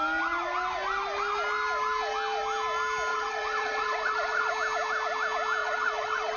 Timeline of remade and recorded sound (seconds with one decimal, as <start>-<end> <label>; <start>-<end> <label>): 0.0-3.1 recorded; 3.1-4.5 remade; 4.5-5.6 recorded; 5.6-6.4 remade